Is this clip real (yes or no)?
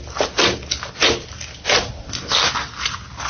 yes